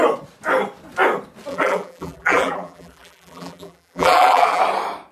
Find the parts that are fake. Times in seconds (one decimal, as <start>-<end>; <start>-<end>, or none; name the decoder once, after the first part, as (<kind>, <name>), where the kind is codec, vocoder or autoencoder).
1.5-4.6 (vocoder, BigVGAN v2)